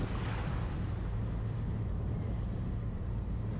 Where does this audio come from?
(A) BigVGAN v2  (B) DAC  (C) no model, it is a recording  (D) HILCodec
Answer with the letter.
C